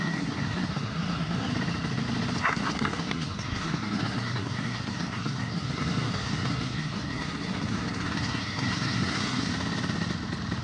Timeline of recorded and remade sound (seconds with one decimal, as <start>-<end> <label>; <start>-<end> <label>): 0.0-1.5 remade; 1.5-2.4 recorded; 2.4-9.5 remade; 9.5-10.6 recorded

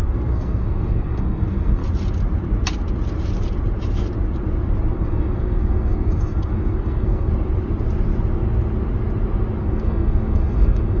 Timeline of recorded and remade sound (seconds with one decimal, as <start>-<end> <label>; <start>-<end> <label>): 0.0-1.8 remade; 1.8-4.9 recorded; 4.9-7.3 remade; 7.3-9.6 recorded; 9.6-11.0 remade

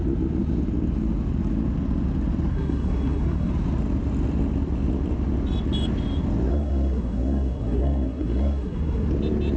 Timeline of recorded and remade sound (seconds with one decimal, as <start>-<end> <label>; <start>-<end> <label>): 0.0-2.5 recorded; 2.5-3.5 remade; 3.5-6.5 recorded; 6.5-9.1 remade; 9.1-9.6 recorded

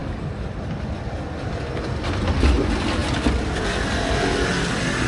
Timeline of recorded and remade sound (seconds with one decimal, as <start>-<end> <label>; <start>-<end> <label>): 0.0-5.1 recorded

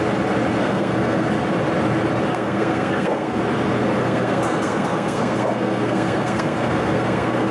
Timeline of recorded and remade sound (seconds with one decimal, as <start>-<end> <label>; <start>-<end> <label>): 0.0-0.6 recorded; 0.6-1.3 remade; 1.3-2.3 recorded; 2.3-3.4 remade; 3.4-4.0 recorded; 4.0-7.5 remade

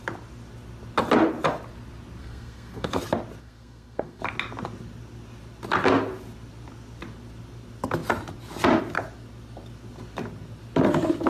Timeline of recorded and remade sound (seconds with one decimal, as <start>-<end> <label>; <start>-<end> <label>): 0.0-2.2 recorded; 2.2-3.0 remade; 3.0-3.4 recorded; 3.4-4.2 remade; 4.2-11.3 recorded

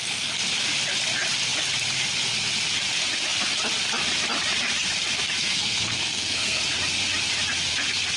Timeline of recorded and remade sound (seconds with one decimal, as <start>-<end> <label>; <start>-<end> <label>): 0.0-5.4 recorded; 5.4-6.6 remade; 6.6-8.2 recorded